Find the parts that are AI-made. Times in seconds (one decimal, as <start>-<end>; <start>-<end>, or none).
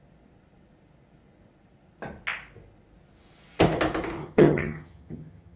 4.2-5.6